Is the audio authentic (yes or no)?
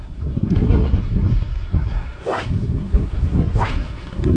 no